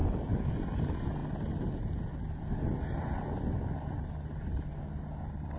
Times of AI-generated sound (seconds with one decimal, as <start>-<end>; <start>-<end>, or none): none